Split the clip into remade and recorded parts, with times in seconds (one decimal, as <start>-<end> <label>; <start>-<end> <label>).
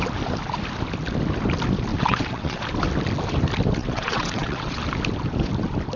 0.0-1.9 recorded; 1.9-2.6 remade; 2.6-3.8 recorded; 3.8-4.8 remade; 4.8-6.0 recorded